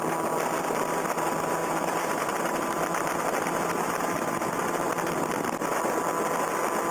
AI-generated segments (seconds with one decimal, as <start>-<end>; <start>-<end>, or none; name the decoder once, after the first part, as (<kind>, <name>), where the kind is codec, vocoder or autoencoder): 1.6-4.9 (vocoder, BigVGAN v2)